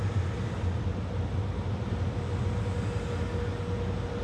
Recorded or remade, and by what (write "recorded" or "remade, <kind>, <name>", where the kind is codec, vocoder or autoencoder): recorded